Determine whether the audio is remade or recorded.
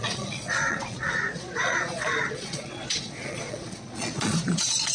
remade